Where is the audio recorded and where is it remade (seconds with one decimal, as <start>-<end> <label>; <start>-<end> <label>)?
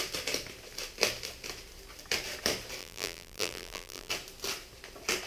0.0-2.8 recorded; 2.8-4.1 remade; 4.1-5.3 recorded